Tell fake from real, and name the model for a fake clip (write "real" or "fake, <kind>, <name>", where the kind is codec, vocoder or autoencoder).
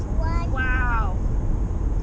real